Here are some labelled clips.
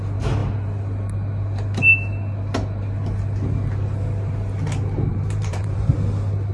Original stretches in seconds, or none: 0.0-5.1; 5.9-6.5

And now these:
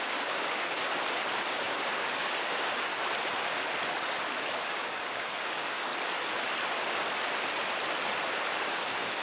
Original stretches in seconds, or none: 0.8-1.5; 2.9-4.5; 5.9-8.7

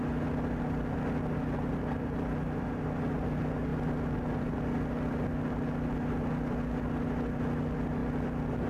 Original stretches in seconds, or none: 0.0-8.7

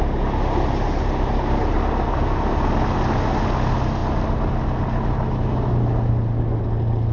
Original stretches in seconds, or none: 0.0-7.1

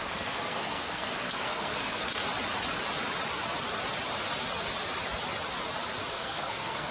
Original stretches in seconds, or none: 2.0-6.1

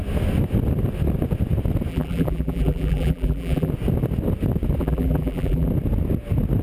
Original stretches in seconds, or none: 0.0-1.9; 3.7-4.8; 5.7-6.6

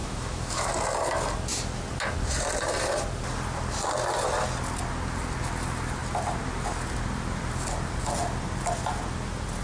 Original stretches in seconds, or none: 0.7-9.6